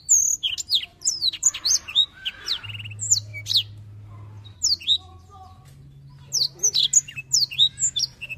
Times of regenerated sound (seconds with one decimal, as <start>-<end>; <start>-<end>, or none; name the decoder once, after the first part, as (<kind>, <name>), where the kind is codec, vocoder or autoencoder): 0.9-1.8 (vocoder, BigVGAN v2)